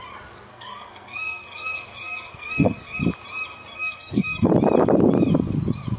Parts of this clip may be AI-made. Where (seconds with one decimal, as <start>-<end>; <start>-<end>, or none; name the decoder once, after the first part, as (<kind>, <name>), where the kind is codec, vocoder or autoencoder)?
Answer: 0.5-3.0 (codec, SNAC); 3.7-4.5